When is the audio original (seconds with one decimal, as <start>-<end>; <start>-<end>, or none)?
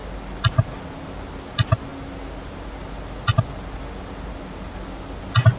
0.0-5.6